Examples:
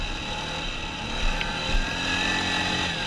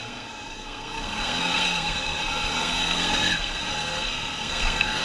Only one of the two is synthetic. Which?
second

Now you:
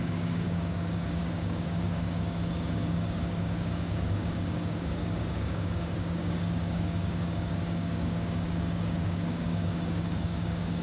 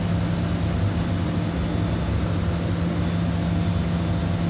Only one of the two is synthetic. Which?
first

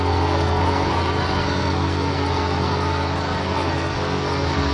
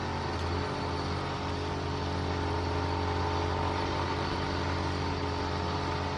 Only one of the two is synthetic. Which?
first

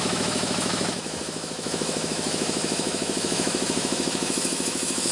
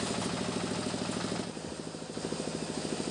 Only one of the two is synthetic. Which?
first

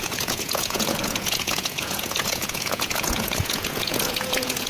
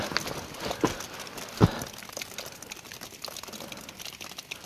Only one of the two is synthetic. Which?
first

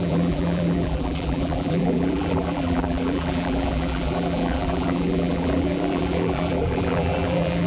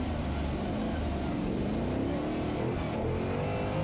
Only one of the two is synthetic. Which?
first